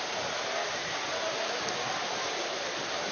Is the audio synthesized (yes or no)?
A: no